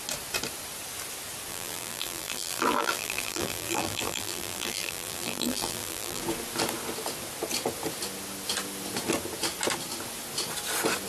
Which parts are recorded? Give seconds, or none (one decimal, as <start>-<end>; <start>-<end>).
0.0-1.5; 6.2-11.1

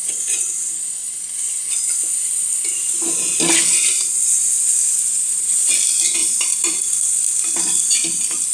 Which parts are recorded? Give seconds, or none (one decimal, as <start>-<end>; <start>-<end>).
0.0-5.1; 5.7-6.2; 7.0-8.5

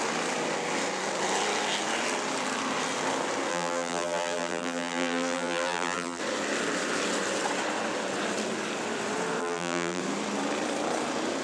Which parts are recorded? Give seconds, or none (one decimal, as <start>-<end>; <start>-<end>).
0.0-3.5; 6.2-9.4; 10.0-11.4

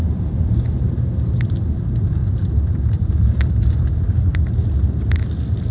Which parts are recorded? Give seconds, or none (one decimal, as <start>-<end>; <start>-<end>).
0.0-1.3; 4.3-5.2

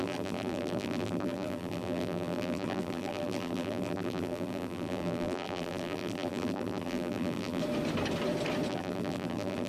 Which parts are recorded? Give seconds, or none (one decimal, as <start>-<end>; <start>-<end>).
7.6-8.7